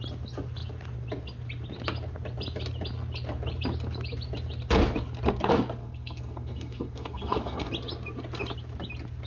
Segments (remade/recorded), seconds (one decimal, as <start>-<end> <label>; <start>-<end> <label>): 0.0-5.8 recorded; 5.8-7.7 remade; 7.7-9.3 recorded